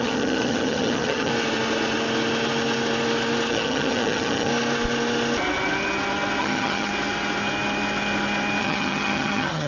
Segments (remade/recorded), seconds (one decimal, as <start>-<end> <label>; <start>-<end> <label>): 0.0-1.3 remade; 1.3-3.5 recorded; 3.5-4.5 remade; 4.5-6.4 recorded; 6.4-6.9 remade; 6.9-8.6 recorded; 8.6-9.7 remade